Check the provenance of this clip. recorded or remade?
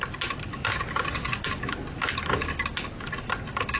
recorded